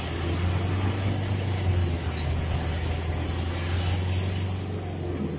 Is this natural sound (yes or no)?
yes